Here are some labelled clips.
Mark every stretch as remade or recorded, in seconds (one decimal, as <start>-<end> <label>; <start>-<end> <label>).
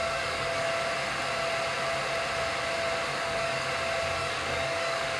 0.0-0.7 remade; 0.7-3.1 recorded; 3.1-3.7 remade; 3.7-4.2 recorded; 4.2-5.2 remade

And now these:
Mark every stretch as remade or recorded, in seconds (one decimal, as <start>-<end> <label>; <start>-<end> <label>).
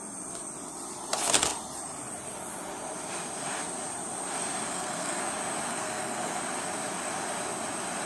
0.0-4.7 recorded; 4.7-5.2 remade; 5.2-5.7 recorded; 5.7-6.4 remade; 6.4-8.1 recorded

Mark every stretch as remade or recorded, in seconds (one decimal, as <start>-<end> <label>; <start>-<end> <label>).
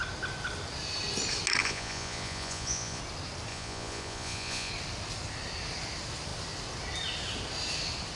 0.0-1.6 recorded; 1.6-3.0 remade; 3.0-3.5 recorded; 3.5-4.7 remade; 4.7-8.2 recorded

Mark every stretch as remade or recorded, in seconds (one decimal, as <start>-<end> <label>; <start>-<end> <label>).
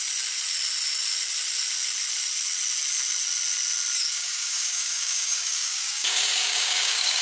0.0-4.1 recorded; 4.1-7.2 remade